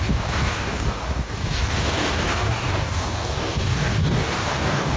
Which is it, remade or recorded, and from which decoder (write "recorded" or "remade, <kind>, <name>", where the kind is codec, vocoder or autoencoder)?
remade, codec, DAC